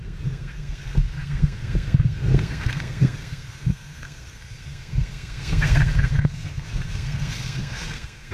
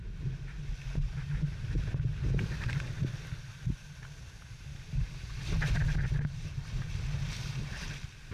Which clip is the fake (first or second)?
first